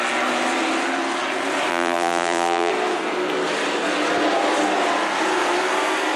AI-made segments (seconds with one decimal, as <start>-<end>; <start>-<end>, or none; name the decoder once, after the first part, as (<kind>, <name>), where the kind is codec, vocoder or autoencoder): 1.7-2.7 (vocoder, BigVGAN v2)

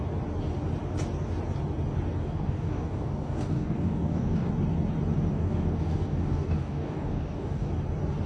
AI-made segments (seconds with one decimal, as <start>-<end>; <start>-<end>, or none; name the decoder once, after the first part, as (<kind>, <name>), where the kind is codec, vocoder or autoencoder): 2.2-4.5 (codec, DAC); 5.3-7.7

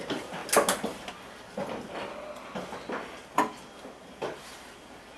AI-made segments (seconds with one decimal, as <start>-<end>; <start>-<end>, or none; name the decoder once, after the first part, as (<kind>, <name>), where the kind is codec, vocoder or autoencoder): none

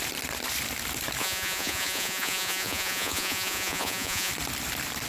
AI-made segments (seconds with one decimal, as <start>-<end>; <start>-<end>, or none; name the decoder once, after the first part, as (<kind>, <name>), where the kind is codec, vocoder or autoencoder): 1.2-4.3 (vocoder, Vocos)

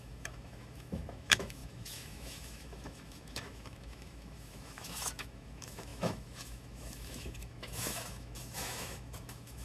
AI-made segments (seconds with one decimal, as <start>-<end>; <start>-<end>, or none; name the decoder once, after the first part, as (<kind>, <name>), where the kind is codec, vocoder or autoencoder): 0.0-9.6 (autoencoder, DAC-VAE)

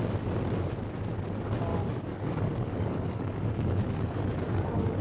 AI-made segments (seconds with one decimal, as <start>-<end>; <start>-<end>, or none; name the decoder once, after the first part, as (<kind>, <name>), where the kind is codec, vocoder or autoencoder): 1.7-5.0 (codec, DAC)

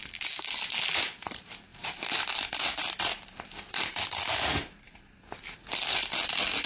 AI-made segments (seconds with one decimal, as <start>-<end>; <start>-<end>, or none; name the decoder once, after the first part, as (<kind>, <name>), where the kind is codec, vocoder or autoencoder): 0.0-1.7 (vocoder, BigVGAN v2); 5.7-6.7